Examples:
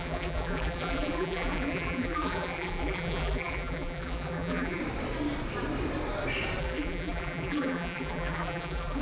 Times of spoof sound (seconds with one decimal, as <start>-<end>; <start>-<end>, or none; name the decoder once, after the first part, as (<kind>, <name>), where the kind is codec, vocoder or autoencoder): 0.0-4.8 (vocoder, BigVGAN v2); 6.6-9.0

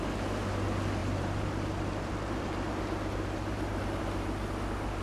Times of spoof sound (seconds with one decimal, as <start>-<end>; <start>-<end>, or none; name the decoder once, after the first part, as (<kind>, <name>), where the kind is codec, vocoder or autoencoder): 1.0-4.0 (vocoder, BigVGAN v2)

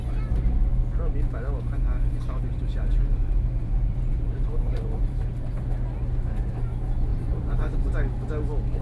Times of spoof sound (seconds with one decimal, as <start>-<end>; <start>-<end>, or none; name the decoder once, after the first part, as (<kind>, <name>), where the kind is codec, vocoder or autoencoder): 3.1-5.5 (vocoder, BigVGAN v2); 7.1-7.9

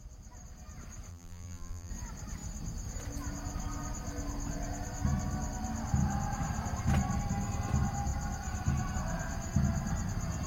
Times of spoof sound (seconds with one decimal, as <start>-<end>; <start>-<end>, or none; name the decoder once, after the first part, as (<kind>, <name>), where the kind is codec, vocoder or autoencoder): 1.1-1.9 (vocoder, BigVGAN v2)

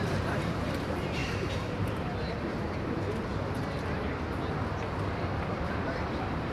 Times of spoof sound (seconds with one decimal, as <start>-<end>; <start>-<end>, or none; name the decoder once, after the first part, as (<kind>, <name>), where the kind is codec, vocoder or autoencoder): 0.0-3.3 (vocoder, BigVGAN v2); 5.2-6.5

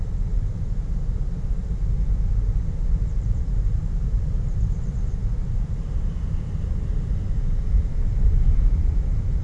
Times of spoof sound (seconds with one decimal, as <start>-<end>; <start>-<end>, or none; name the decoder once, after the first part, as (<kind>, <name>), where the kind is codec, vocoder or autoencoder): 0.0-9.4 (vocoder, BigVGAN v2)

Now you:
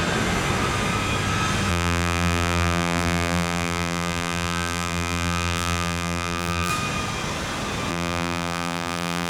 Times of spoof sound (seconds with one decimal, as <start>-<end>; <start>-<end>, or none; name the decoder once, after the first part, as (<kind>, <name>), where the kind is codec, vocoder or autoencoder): 1.7-6.7 (vocoder, BigVGAN v2); 7.9-9.3